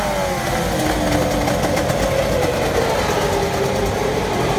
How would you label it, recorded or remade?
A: recorded